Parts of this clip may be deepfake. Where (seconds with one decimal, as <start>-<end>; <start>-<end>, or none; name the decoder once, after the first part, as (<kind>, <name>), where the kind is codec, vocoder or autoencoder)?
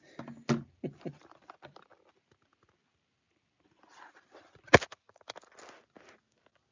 none